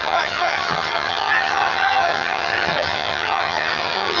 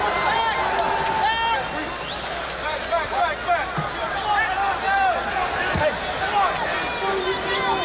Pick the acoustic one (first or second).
second